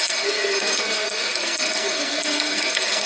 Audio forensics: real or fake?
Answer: fake